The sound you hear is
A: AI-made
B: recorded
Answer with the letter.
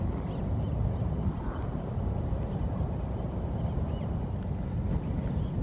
B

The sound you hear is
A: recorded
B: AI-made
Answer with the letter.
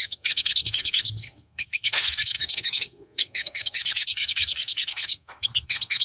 B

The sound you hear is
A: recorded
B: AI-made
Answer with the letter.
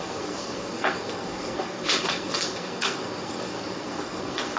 B